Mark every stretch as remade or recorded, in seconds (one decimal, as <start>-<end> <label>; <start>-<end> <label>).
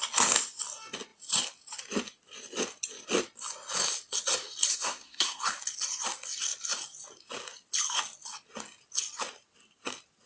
0.0-4.7 recorded; 4.7-5.4 remade; 5.4-10.3 recorded